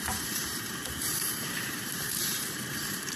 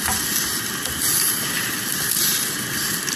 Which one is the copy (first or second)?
first